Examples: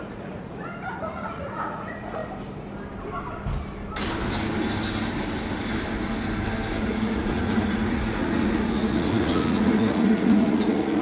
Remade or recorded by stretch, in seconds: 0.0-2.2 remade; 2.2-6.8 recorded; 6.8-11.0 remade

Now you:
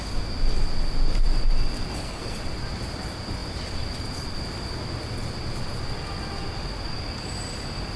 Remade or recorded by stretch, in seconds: 0.0-1.9 recorded; 1.9-2.4 remade; 2.4-8.0 recorded

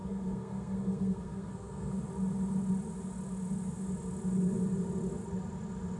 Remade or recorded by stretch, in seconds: 0.0-2.0 remade; 2.0-6.0 recorded

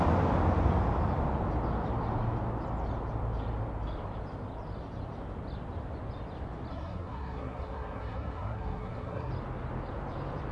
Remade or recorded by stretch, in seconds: 0.0-6.7 recorded; 6.7-9.3 remade; 9.3-10.5 recorded

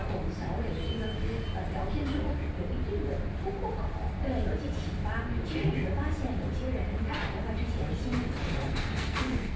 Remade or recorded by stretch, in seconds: 0.0-8.4 recorded; 8.4-9.6 remade